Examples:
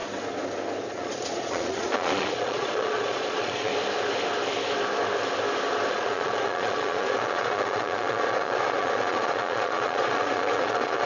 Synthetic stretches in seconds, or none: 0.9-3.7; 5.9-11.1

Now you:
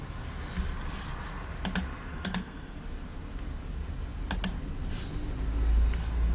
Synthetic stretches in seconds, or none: 2.1-2.8

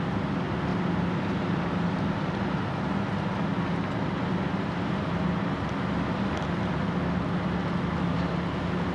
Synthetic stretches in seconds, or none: 0.7-5.1

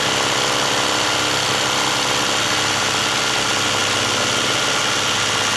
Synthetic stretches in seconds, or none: none

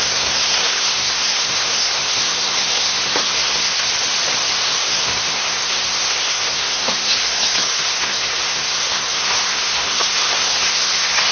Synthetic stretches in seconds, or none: 0.0-3.9; 4.6-11.3

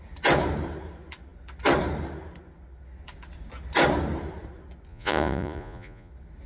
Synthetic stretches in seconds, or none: 4.9-6.1

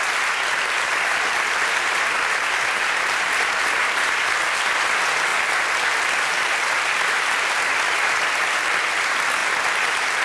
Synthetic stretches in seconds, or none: none

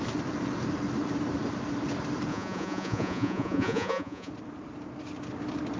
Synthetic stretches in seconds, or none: 2.3-4.3